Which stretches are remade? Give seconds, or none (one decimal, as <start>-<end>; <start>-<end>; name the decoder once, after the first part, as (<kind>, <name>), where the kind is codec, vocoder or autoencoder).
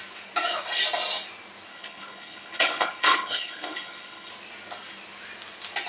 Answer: 1.7-4.3 (codec, HILCodec)